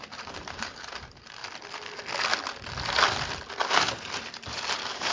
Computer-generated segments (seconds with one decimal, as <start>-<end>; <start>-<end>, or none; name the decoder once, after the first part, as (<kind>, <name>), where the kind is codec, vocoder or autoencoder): 0.0-1.4 (vocoder, BigVGAN v2); 3.7-5.1